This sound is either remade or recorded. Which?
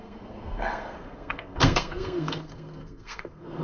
remade